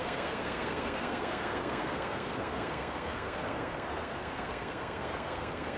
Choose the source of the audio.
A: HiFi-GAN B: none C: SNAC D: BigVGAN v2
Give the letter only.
C